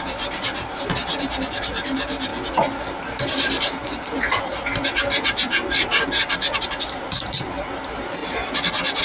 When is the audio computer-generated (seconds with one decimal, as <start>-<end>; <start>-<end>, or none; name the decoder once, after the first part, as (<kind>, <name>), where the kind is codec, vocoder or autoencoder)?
0.0-2.3 (vocoder, BigVGAN v2); 3.2-8.2